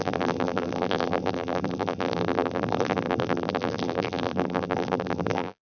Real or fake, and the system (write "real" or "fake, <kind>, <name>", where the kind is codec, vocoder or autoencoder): fake, vocoder, BigVGAN v2